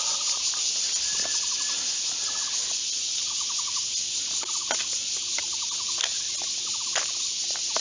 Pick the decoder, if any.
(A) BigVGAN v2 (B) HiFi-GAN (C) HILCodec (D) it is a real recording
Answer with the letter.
D